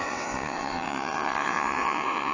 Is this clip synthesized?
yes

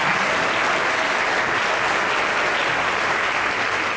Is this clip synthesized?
no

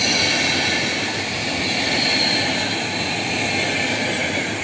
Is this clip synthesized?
no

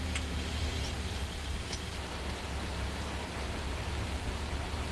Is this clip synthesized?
yes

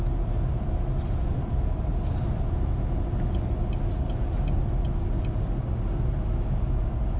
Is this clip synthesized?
no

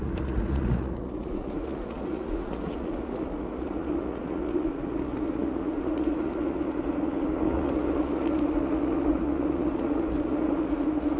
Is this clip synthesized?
yes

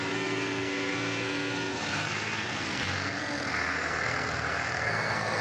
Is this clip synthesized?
yes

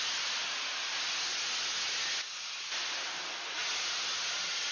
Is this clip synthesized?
no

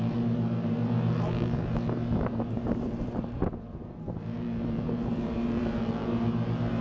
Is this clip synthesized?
yes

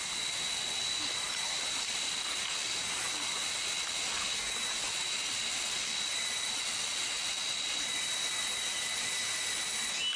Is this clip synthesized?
no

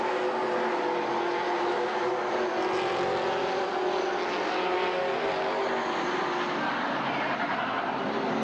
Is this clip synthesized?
no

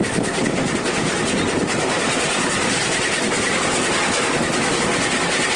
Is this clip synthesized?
no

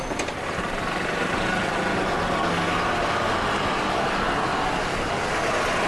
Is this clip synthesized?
no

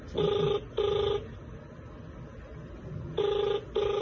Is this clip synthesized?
no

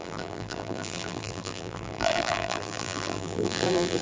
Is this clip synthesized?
yes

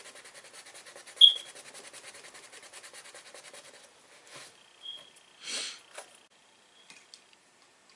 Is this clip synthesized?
no